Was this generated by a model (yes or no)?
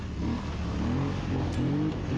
no